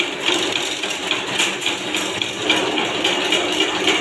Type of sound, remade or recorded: recorded